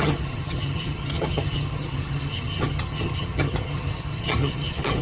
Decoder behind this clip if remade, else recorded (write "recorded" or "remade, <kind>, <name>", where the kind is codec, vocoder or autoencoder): remade, vocoder, HiFi-GAN